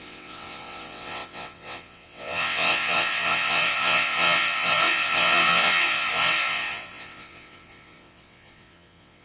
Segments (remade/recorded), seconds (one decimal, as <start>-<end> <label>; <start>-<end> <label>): 0.0-9.2 remade